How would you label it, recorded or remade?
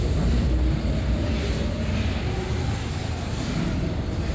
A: recorded